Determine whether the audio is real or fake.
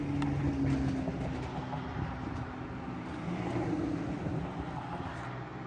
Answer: real